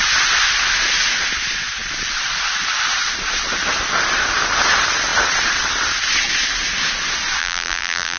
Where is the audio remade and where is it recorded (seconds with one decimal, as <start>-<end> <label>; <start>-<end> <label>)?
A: 0.0-7.4 recorded; 7.4-8.2 remade